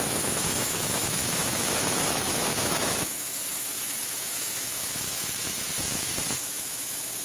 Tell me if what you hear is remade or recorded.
remade